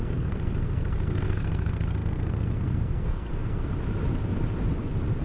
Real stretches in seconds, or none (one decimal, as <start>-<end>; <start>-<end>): 3.7-5.2